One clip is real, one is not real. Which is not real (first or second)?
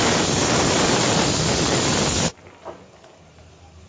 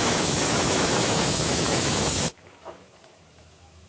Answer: second